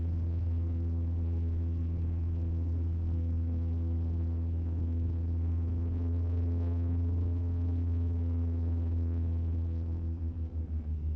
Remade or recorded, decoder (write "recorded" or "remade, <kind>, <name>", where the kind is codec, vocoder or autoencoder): remade, codec, SNAC